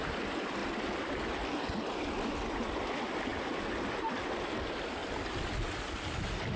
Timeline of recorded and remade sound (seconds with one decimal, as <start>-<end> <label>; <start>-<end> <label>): 0.0-6.6 recorded